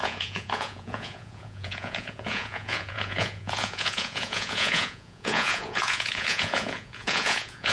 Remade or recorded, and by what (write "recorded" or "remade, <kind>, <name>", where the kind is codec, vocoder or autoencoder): remade, vocoder, Vocos